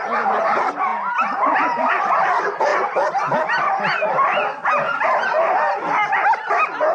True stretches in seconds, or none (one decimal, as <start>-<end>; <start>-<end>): 0.0-6.9